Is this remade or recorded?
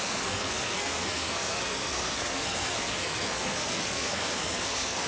remade